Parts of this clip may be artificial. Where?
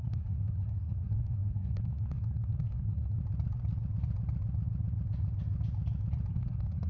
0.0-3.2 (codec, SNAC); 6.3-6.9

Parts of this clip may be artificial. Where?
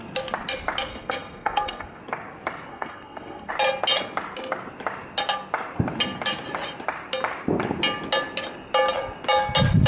0.9-2.0 (codec, SNAC); 2.7-3.5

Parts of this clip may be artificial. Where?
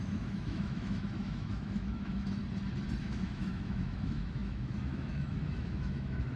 0.0-2.4 (autoencoder, DAC-VAE); 3.0-6.4